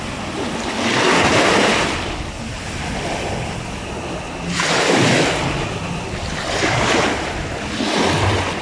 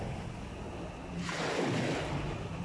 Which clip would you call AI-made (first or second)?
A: first